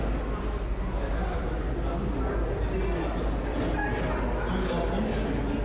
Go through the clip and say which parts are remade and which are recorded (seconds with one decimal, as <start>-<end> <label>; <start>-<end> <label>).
0.0-5.6 recorded